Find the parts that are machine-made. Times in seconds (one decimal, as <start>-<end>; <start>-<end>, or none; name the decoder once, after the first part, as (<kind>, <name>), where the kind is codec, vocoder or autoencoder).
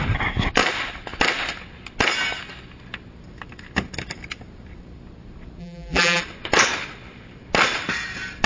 5.6-6.2 (vocoder, BigVGAN v2)